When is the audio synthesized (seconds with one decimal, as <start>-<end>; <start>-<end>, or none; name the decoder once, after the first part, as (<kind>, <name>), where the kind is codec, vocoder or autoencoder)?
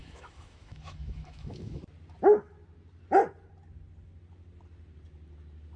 0.0-1.8 (autoencoder, DAC-VAE)